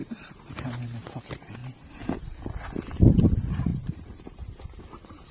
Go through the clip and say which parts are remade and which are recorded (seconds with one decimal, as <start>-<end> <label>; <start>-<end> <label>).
0.0-1.2 remade; 1.2-3.7 recorded; 3.7-4.8 remade; 4.8-5.3 recorded

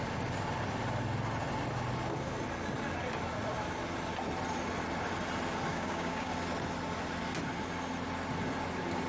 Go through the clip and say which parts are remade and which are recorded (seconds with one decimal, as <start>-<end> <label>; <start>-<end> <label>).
0.0-5.7 recorded; 5.7-6.3 remade; 6.3-9.1 recorded

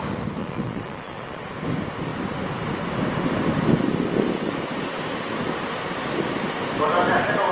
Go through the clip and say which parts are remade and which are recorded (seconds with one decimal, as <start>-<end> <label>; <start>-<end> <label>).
0.0-0.4 recorded; 0.4-1.4 remade; 1.4-7.5 recorded

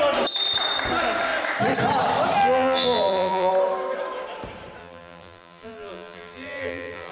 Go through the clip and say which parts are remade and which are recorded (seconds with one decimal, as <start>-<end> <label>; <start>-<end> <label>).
0.0-2.4 recorded; 2.4-3.5 remade; 3.5-4.8 recorded; 4.8-7.1 remade

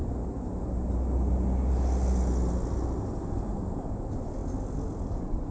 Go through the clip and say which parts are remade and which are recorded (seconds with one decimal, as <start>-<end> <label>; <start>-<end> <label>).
0.0-5.5 recorded

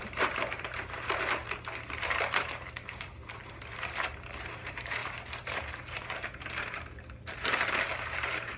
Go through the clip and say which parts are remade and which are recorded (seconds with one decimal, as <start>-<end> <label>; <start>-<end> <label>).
0.0-1.4 remade; 1.4-2.0 recorded; 2.0-8.6 remade

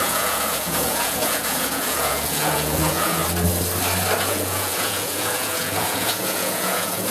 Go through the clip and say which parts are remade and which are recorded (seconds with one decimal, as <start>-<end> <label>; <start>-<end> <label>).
0.0-3.2 remade; 3.2-4.2 recorded; 4.2-7.1 remade